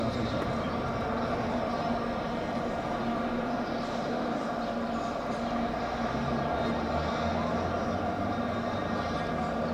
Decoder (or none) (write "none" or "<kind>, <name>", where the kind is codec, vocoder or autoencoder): none